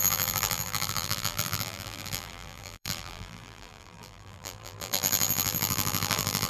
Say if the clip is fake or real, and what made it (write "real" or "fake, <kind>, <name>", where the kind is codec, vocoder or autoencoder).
fake, vocoder, BigVGAN v2